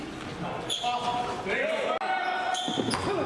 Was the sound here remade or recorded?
recorded